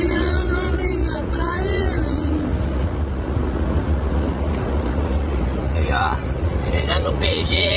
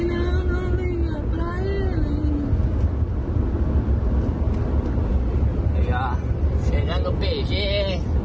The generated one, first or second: first